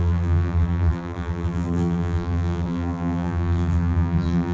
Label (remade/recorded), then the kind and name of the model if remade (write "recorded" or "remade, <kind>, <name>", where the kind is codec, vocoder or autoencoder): remade, vocoder, BigVGAN v2